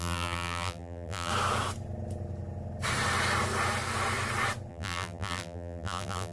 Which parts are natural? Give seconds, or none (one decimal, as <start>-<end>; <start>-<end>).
1.3-4.7